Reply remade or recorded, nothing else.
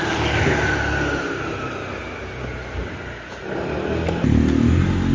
recorded